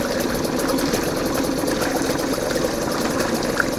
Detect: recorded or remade recorded